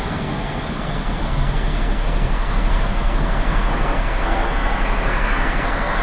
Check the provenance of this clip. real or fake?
fake